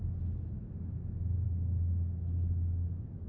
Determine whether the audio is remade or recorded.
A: recorded